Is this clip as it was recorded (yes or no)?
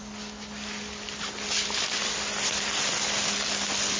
yes